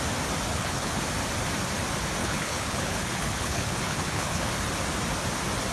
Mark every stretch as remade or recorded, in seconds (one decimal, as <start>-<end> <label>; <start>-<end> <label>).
0.0-0.5 recorded; 0.5-1.0 remade; 1.0-2.2 recorded; 2.2-4.5 remade; 4.5-5.7 recorded